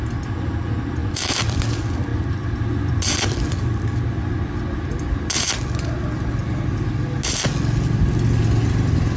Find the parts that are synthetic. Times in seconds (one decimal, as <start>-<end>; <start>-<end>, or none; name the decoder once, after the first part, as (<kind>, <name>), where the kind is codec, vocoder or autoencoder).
1.0-1.6 (vocoder, BigVGAN v2); 2.1-5.6